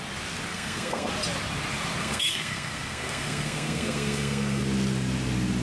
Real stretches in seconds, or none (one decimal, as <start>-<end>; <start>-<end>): 0.0-0.5; 1.1-2.0; 4.6-5.6